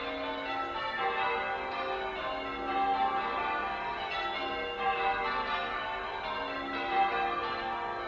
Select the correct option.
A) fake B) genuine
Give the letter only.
B